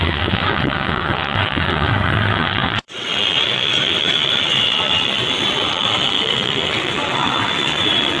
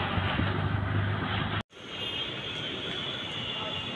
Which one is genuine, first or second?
second